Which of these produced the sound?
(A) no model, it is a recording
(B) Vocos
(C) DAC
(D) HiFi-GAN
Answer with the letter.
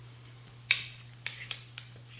A